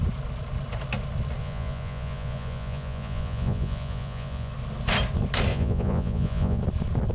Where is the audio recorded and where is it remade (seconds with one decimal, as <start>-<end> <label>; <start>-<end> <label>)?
0.0-1.4 recorded; 1.4-4.5 remade; 4.5-5.5 recorded; 5.5-6.6 remade; 6.6-7.1 recorded